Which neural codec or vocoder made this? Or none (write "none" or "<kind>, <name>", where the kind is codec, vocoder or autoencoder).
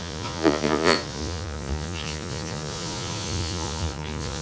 vocoder, Vocos